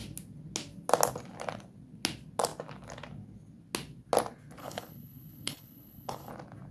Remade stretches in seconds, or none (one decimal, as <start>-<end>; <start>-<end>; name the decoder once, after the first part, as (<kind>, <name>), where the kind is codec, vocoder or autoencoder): 4.6-6.3 (codec, HILCodec)